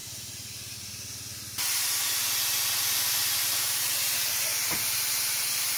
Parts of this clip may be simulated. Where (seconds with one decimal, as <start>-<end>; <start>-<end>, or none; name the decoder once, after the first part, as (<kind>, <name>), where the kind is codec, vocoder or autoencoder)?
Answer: 3.4-4.5 (vocoder, BigVGAN v2); 5.0-5.8